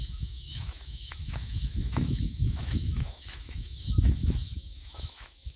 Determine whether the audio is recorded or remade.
remade